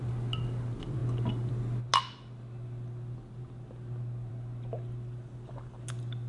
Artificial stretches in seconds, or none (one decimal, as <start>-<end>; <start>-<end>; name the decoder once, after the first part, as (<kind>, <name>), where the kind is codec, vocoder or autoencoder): none